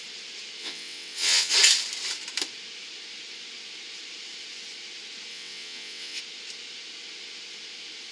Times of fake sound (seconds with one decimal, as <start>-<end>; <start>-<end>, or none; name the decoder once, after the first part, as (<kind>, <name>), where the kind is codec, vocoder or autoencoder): 0.6-1.5 (vocoder, WaveNeXt); 5.3-6.2